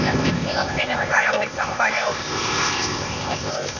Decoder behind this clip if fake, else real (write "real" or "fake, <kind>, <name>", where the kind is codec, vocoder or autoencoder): fake, codec, ZipCodec